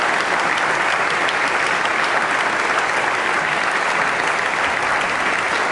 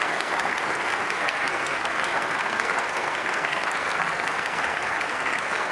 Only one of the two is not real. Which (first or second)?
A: second